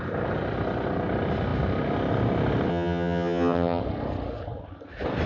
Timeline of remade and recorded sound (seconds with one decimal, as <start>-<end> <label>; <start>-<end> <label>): 0.0-2.7 recorded; 2.7-3.8 remade; 3.8-5.3 recorded